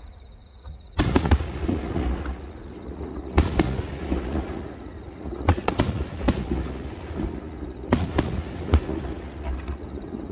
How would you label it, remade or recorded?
remade